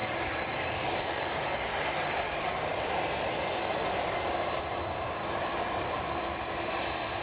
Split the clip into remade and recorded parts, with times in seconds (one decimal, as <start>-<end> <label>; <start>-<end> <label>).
0.0-2.8 remade; 2.8-3.6 recorded; 3.6-4.3 remade; 4.3-5.2 recorded; 5.2-5.9 remade; 5.9-7.2 recorded